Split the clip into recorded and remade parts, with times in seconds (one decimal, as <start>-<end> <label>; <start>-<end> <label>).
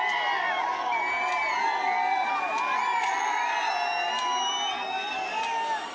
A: 0.0-3.0 recorded; 3.0-3.7 remade; 3.7-5.9 recorded